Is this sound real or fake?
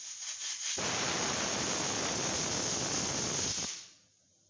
real